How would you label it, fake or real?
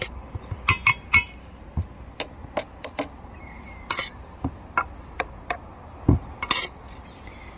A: real